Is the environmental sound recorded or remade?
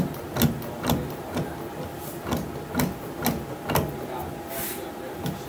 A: recorded